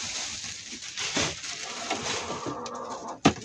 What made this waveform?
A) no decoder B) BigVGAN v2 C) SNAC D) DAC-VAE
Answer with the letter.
A